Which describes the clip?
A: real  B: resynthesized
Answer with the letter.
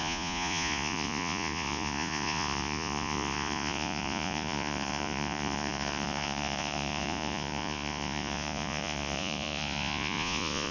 B